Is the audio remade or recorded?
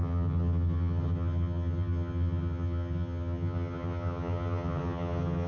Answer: remade